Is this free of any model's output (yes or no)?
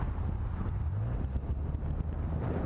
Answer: yes